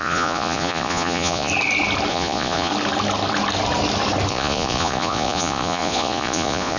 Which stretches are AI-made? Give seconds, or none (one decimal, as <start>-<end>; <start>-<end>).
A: 0.0-1.5; 2.1-2.7; 4.3-6.8